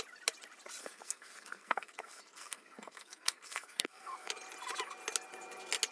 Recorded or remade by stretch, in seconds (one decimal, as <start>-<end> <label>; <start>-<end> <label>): 0.0-0.8 recorded; 0.8-4.3 remade; 4.3-5.9 recorded